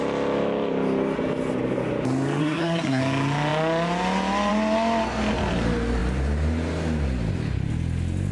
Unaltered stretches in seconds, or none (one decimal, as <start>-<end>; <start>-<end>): 0.0-2.4; 3.0-8.3